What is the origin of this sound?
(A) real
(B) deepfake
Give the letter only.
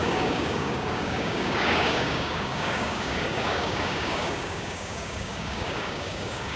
B